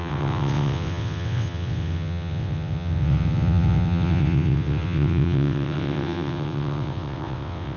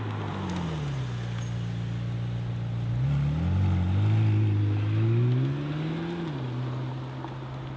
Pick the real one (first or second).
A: second